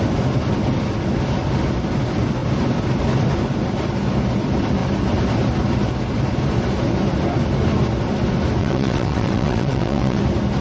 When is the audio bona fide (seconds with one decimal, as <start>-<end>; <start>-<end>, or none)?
0.0-8.6; 10.2-10.6